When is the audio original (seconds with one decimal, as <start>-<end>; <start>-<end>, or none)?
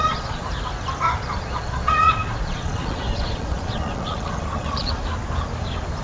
0.4-1.1; 5.0-6.0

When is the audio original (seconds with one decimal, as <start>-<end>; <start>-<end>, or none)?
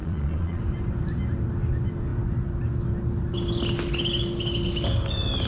0.6-5.5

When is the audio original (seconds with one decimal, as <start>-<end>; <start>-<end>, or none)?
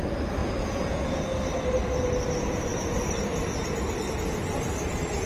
0.0-0.4; 1.2-5.3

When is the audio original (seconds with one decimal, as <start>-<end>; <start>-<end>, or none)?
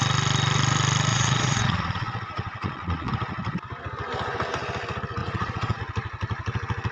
0.0-1.1; 3.1-5.2; 5.8-6.9